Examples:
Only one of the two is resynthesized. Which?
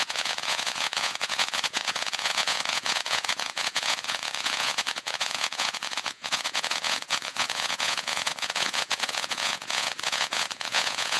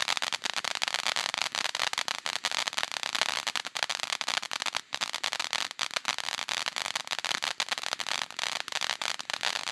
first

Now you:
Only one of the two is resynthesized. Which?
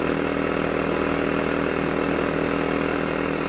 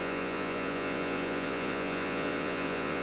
second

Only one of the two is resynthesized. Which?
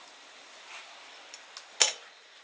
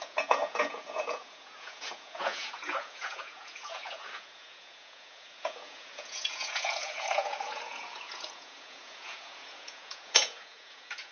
second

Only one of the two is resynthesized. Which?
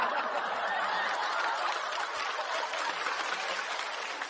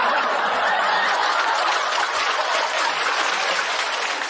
second